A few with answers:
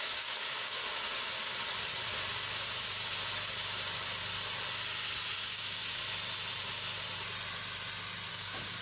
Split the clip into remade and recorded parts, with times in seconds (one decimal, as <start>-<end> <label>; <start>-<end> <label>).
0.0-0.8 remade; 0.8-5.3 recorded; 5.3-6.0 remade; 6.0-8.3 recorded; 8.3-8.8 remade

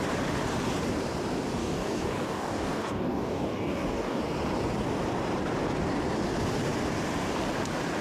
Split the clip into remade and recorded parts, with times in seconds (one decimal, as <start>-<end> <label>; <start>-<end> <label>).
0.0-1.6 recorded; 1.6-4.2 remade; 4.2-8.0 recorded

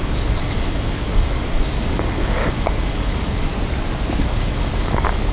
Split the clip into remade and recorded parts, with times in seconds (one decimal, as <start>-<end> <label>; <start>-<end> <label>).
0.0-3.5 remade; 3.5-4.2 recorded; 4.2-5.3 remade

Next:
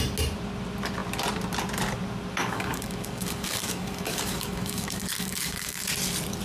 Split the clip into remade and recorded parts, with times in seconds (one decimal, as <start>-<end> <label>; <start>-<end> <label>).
0.0-2.3 recorded; 2.3-5.9 remade; 5.9-6.4 recorded